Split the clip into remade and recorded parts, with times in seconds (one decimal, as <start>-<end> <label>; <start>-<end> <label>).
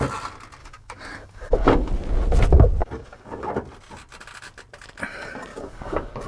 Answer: 0.0-0.6 recorded; 0.6-1.9 remade; 1.9-2.8 recorded; 2.8-3.5 remade; 3.5-5.5 recorded; 5.5-6.3 remade